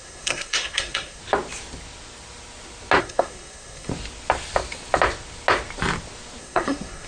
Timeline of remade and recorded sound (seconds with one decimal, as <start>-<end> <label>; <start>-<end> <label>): 0.0-1.2 remade; 1.2-3.0 recorded; 3.0-3.9 remade; 3.9-6.4 recorded; 6.4-7.1 remade